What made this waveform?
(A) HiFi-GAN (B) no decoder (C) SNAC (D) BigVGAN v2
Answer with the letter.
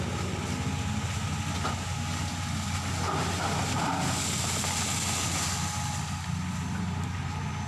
B